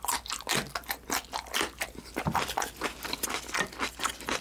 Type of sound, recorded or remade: recorded